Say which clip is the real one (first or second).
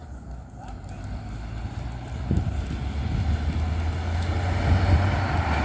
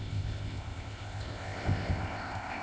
first